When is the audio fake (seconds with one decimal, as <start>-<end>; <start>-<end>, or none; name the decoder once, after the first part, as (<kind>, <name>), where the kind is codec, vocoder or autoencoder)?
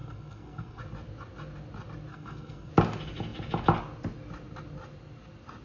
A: 0.0-0.8 (codec, SNAC); 2.1-2.7